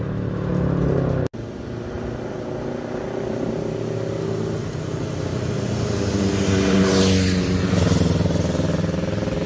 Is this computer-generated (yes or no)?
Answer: no